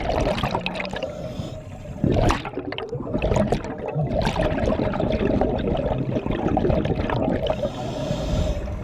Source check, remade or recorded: recorded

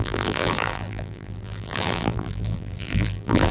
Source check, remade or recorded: remade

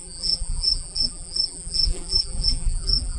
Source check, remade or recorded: remade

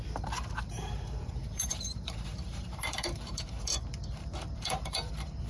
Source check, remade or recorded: remade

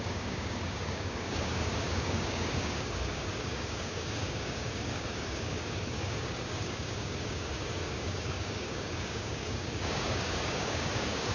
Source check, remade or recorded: remade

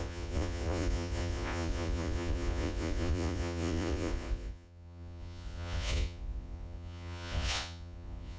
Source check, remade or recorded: remade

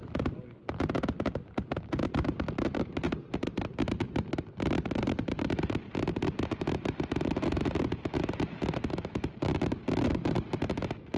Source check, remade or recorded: recorded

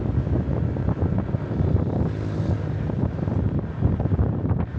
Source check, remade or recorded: recorded